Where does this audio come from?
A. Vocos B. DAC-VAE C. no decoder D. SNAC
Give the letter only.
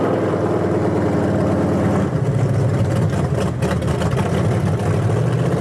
C